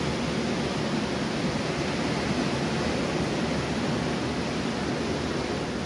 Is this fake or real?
real